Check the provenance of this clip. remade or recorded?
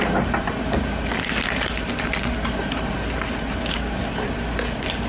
recorded